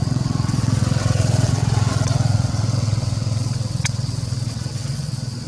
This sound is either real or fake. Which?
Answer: fake